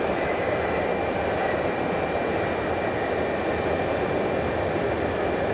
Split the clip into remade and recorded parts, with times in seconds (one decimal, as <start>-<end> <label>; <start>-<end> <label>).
0.0-0.9 remade; 0.9-4.2 recorded; 4.2-5.5 remade